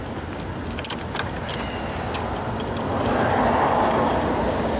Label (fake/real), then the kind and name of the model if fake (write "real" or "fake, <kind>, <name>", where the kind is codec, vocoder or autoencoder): real